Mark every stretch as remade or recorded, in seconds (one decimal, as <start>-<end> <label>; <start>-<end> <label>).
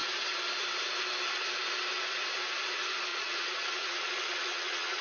0.0-3.1 recorded; 3.1-5.0 remade